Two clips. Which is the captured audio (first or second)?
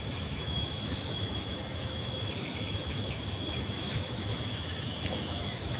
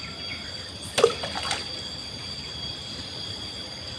second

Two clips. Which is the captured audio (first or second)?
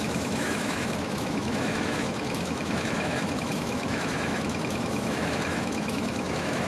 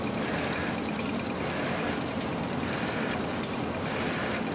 second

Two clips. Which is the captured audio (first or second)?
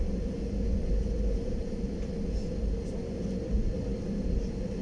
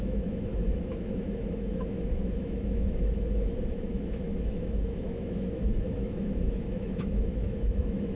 first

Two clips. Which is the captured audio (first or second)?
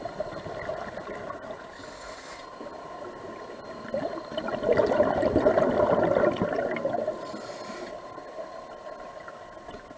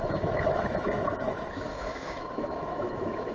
first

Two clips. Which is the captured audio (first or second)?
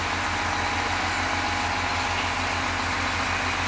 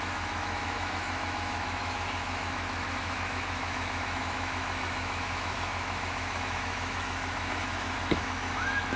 first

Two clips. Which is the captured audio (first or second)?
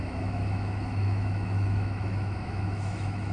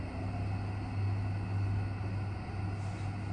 second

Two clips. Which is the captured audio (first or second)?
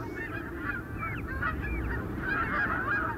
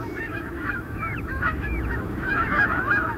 first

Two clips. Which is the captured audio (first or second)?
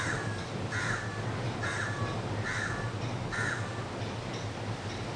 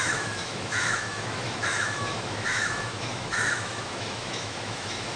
first